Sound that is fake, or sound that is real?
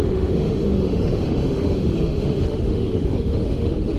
fake